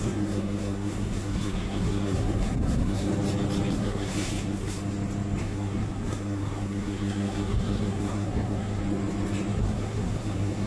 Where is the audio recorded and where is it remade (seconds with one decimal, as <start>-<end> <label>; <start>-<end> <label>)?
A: 0.0-3.1 remade; 3.1-3.7 recorded; 3.7-4.8 remade; 4.8-5.4 recorded; 5.4-8.8 remade; 8.8-9.5 recorded; 9.5-10.7 remade